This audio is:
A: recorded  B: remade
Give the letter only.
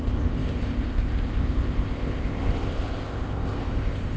B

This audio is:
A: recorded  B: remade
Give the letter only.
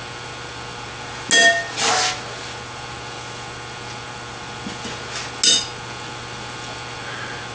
A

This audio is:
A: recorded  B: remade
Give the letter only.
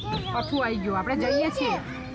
A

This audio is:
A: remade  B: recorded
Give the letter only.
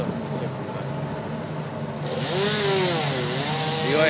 B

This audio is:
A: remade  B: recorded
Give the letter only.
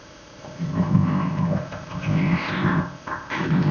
A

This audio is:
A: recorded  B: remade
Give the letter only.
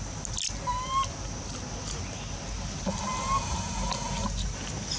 A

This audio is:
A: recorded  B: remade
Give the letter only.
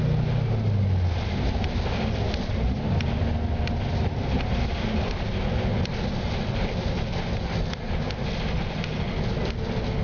A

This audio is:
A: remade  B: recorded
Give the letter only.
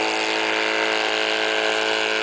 B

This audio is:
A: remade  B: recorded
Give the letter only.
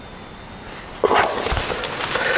B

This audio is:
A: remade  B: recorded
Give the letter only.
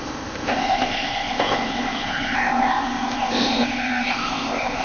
A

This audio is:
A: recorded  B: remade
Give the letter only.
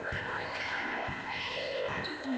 B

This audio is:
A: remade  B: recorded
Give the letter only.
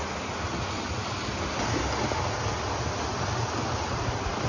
B